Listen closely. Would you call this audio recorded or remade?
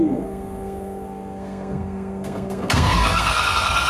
remade